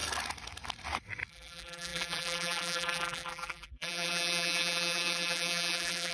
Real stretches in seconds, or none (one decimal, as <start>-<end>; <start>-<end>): 0.0-1.3